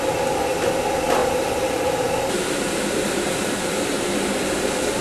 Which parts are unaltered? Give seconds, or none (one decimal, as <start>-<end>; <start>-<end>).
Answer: 0.0-1.2; 4.2-5.0